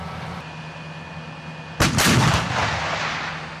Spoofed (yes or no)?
no